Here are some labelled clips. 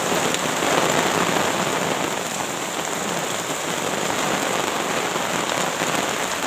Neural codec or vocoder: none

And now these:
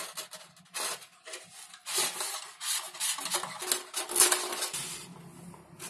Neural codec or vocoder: none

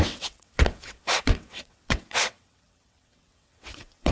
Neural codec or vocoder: vocoder, WaveNeXt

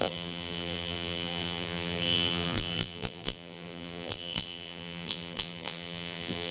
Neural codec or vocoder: vocoder, BigVGAN v2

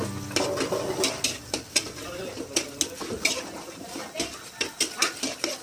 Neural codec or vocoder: none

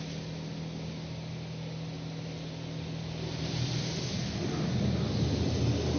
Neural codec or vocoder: none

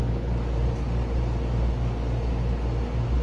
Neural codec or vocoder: none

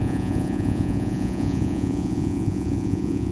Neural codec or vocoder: vocoder, Vocos